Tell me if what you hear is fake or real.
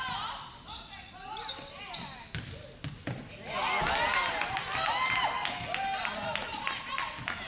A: real